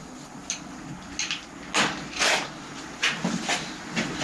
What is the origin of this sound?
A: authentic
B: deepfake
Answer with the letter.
A